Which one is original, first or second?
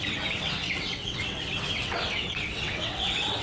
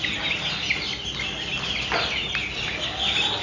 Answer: second